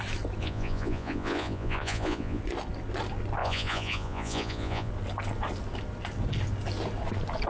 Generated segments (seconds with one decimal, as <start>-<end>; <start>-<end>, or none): 0.4-2.4; 3.4-4.9